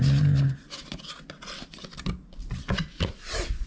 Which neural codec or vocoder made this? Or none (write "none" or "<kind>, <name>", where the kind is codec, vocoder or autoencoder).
none